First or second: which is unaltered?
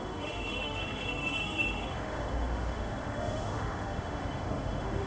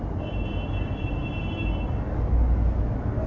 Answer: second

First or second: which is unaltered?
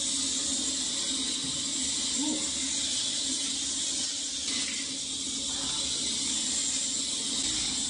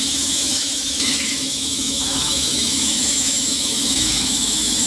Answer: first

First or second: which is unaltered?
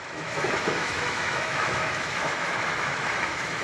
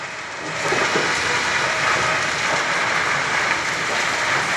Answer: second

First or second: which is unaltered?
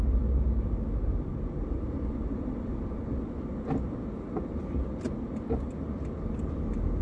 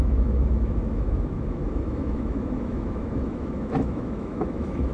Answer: first